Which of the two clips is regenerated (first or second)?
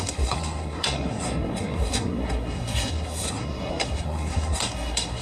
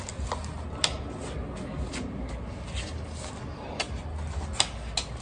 first